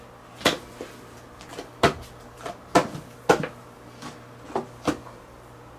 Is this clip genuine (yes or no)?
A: yes